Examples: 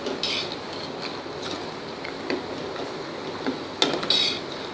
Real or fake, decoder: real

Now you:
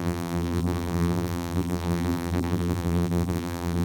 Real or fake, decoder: fake, vocoder, BigVGAN v2